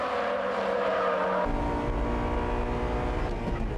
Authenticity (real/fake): real